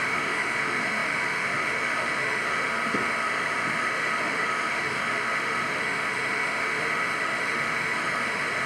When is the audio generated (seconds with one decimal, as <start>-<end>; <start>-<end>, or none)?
0.0-8.7